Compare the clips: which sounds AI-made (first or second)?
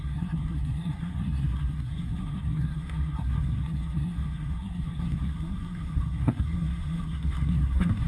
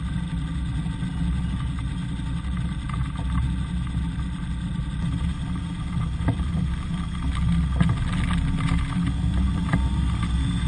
first